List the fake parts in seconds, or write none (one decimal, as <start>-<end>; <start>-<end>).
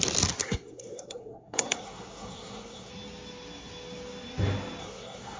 0.4-2.9; 4.8-5.4